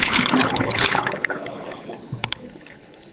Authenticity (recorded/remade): remade